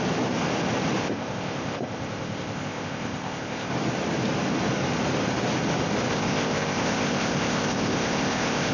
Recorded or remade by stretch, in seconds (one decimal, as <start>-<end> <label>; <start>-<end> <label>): 0.0-1.0 recorded; 1.0-3.7 remade; 3.7-6.1 recorded; 6.1-8.7 remade